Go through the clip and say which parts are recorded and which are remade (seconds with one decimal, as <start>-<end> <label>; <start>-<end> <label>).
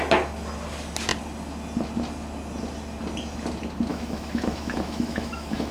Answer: 0.0-3.9 recorded; 3.9-5.7 remade